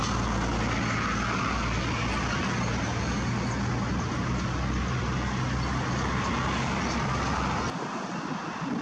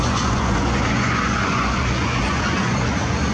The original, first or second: first